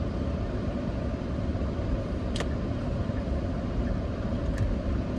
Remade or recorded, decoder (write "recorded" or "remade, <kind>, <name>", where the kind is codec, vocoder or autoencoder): remade, vocoder, BigVGAN v2